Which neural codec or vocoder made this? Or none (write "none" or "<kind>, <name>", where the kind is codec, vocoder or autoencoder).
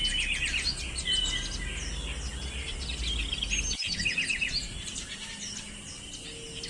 none